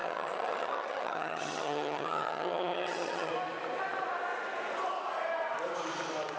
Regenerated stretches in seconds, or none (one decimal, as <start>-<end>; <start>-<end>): 0.0-3.3